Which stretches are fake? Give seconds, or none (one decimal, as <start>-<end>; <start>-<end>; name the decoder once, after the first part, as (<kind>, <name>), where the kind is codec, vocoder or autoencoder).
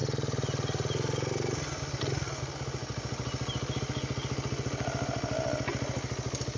none